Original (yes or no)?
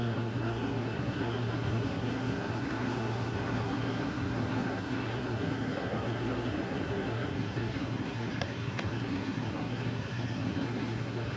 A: no